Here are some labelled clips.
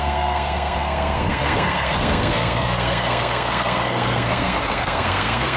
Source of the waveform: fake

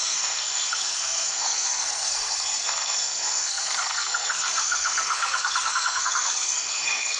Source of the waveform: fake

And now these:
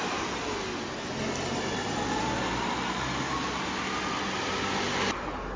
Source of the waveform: real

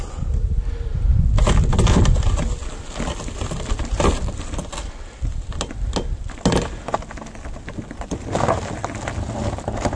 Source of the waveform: real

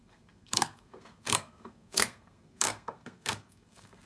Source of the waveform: fake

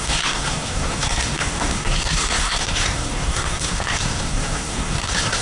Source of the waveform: fake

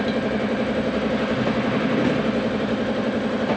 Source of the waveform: real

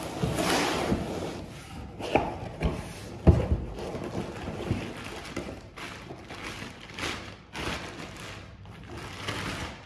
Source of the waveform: real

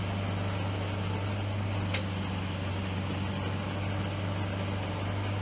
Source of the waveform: real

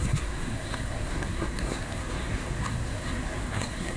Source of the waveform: fake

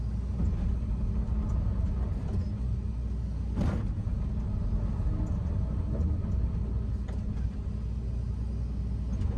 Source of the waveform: real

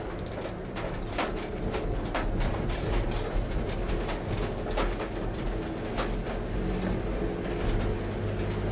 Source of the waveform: real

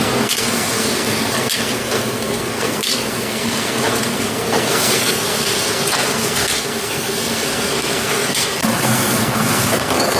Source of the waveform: fake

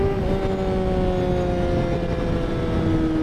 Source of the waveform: real